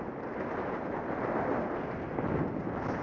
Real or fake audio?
real